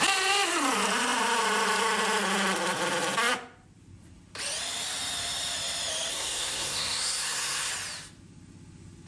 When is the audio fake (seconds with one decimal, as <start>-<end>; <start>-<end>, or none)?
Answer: 6.1-7.7

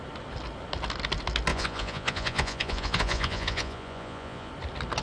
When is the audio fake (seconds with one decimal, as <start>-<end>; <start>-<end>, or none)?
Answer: 1.5-4.5